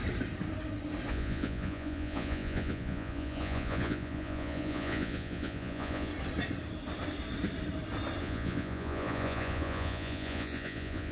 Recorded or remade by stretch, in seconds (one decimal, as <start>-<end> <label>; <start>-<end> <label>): 0.0-1.1 recorded; 1.1-6.1 remade; 6.1-8.2 recorded; 8.2-11.1 remade